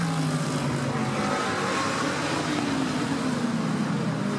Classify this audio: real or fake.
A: real